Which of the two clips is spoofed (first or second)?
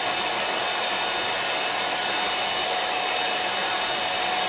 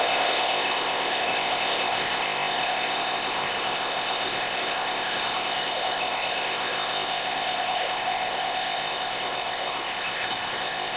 second